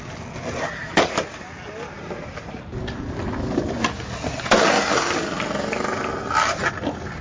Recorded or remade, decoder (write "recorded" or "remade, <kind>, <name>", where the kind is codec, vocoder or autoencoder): recorded